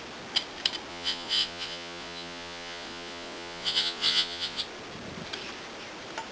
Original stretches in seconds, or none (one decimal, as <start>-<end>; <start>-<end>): 0.0-0.9; 4.6-6.3